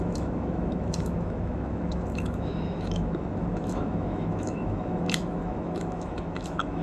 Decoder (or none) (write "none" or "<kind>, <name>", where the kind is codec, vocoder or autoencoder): autoencoder, DAC-VAE